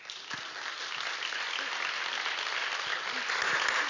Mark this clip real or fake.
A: real